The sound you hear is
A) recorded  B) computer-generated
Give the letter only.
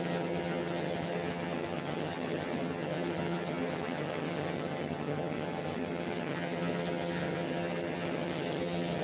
B